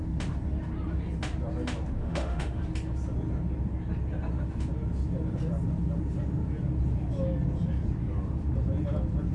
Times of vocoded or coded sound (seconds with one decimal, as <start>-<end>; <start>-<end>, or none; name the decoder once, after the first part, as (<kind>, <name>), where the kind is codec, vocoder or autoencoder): 2.0-2.6 (autoencoder, DAC-VAE)